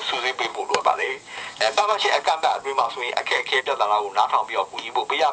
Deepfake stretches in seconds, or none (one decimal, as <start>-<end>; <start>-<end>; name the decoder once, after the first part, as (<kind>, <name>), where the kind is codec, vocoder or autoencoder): 0.5-3.6 (codec, DAC)